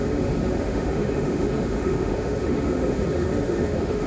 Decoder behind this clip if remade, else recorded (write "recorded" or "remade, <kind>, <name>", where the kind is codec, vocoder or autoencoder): remade, autoencoder, DAC-VAE